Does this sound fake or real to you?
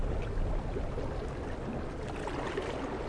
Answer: real